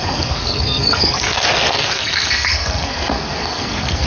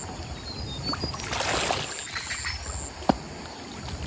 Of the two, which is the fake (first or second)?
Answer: first